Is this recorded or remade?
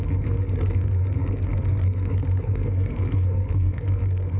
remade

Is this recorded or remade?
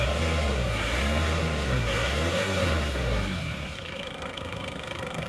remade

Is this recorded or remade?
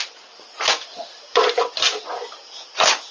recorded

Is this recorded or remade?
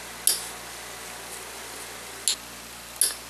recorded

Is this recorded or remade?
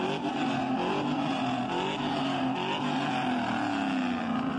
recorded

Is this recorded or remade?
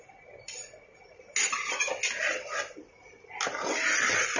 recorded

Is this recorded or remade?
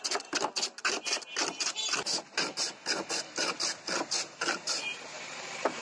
recorded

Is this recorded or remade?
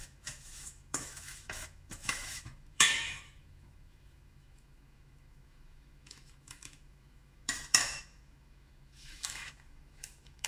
remade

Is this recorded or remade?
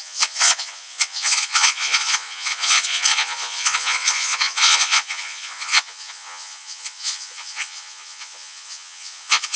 remade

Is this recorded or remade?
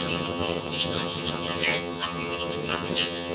remade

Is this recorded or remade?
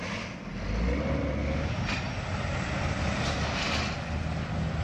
recorded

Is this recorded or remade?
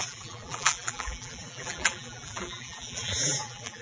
remade